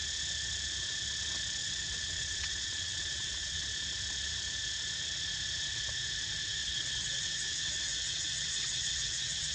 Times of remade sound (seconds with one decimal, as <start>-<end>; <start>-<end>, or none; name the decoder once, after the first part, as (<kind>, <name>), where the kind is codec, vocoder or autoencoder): 1.6-3.6 (vocoder, WaveNeXt); 6.6-9.5